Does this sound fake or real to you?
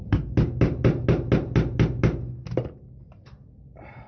real